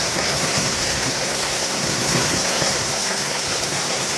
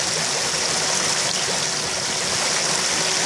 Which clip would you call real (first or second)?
second